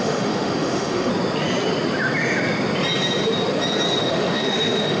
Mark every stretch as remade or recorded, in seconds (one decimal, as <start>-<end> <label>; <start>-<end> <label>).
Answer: 0.0-1.1 remade; 1.1-4.0 recorded; 4.0-5.0 remade